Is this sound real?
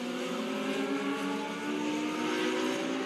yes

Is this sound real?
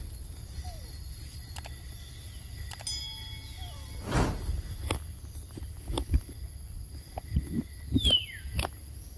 yes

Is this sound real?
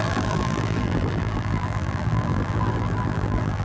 no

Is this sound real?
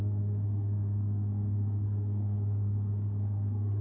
no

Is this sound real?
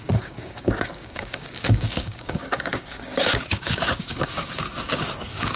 no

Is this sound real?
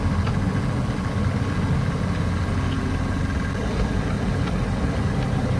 yes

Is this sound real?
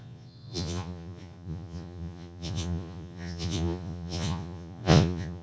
no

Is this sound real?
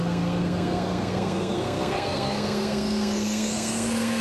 no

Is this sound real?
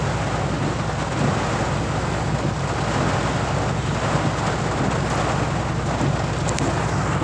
yes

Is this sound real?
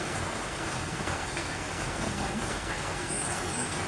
no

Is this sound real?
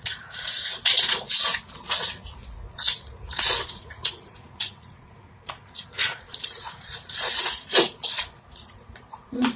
no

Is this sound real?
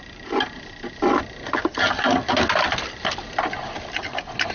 yes